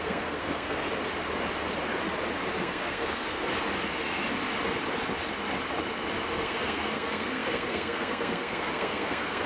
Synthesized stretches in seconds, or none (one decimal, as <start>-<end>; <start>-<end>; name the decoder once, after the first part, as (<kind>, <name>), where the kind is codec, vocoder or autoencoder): 0.0-0.8 (codec, SNAC); 2.6-3.5; 6.3-9.5